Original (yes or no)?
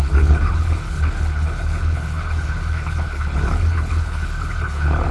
no